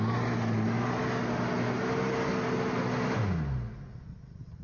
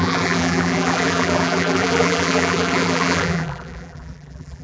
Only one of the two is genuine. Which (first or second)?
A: first